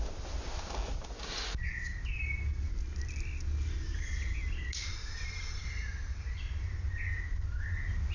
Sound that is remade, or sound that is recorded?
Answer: recorded